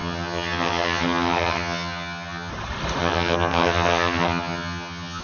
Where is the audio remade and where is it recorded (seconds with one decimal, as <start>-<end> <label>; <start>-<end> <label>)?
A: 0.0-2.5 remade; 2.5-3.0 recorded; 3.0-5.2 remade